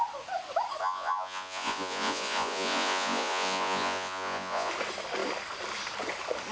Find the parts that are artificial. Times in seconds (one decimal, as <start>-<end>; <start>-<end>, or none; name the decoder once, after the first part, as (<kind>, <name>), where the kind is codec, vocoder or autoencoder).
0.8-4.7 (vocoder, Vocos)